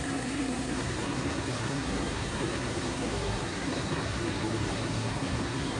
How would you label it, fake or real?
fake